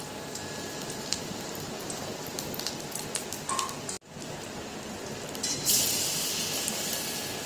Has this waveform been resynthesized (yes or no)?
no